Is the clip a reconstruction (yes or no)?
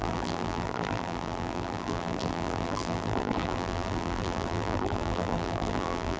yes